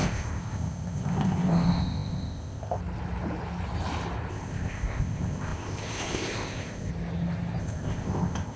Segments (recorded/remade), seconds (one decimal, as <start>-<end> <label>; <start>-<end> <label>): 0.0-2.8 remade; 2.8-4.3 recorded; 4.3-6.9 remade; 6.9-7.6 recorded; 7.6-8.6 remade

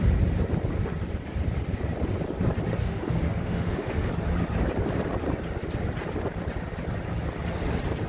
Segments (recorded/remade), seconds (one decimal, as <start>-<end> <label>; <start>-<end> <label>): 0.0-2.8 recorded; 2.8-4.1 remade; 4.1-8.1 recorded

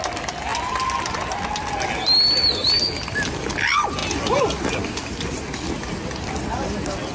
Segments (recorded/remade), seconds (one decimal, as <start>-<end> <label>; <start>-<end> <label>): 0.0-7.1 recorded